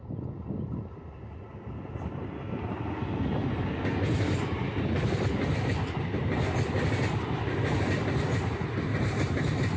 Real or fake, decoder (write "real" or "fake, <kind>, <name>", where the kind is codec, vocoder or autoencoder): real